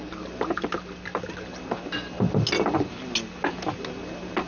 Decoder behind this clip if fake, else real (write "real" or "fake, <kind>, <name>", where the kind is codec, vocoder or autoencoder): real